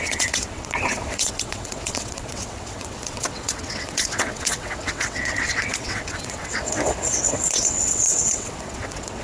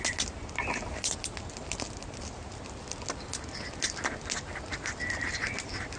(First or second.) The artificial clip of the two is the first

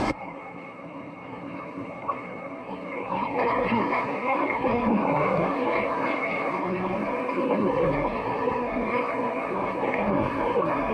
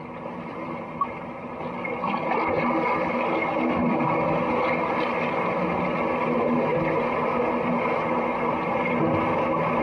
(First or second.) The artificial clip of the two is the first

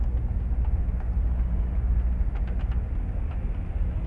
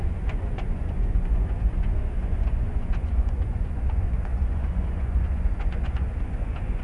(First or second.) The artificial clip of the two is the second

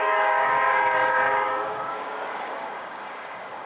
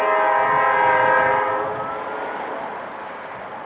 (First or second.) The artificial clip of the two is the first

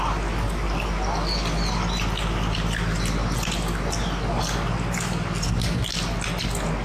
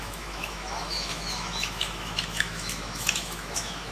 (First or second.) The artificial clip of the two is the second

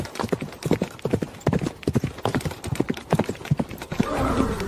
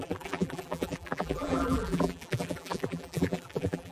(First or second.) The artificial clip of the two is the second